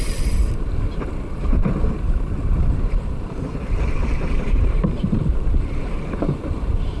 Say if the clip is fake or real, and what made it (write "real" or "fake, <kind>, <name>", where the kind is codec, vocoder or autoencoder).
fake, vocoder, BigVGAN v2